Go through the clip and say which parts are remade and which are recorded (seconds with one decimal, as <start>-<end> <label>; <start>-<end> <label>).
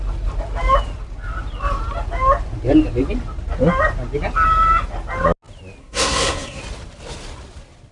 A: 0.0-5.8 recorded; 5.8-6.6 remade; 6.6-7.9 recorded